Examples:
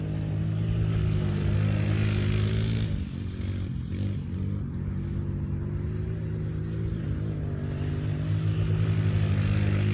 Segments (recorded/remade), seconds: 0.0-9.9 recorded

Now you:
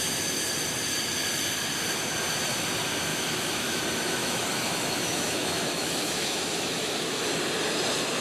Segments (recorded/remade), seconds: 0.0-3.1 recorded; 3.1-3.8 remade; 3.8-4.2 recorded; 4.2-7.3 remade; 7.3-8.2 recorded

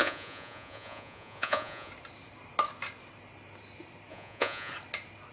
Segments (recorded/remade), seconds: 0.0-1.9 remade; 1.9-4.1 recorded; 4.1-4.7 remade; 4.7-5.3 recorded

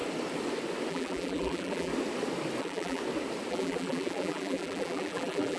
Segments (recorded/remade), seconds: 0.0-0.9 recorded; 0.9-1.9 remade; 1.9-2.6 recorded; 2.6-3.0 remade; 3.0-3.5 recorded; 3.5-5.6 remade

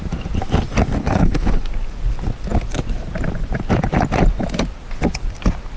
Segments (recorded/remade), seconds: 0.0-1.0 recorded; 1.0-1.6 remade; 1.6-5.8 recorded